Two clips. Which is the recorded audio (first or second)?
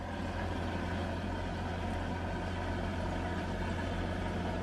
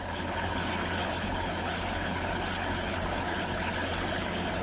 first